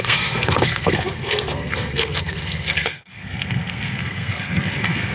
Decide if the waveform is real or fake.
fake